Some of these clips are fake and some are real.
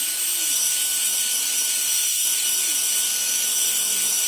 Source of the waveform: fake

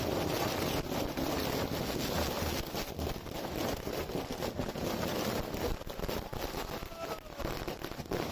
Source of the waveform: real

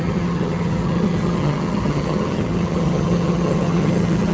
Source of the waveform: fake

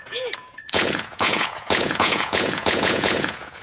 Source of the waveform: fake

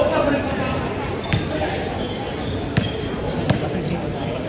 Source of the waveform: real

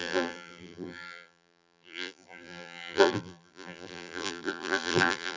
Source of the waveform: fake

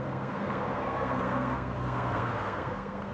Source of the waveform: fake